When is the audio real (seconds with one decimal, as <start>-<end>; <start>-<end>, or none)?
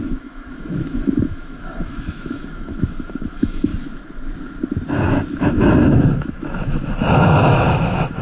3.7-5.4